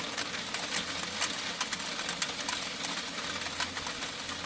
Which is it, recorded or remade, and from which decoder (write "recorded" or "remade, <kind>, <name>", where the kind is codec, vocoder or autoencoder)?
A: recorded